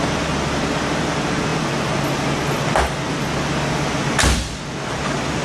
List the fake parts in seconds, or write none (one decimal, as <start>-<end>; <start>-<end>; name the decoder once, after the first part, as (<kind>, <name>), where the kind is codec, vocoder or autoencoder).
none